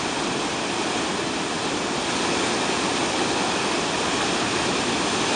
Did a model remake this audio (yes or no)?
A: no